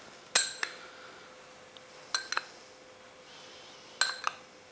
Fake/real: real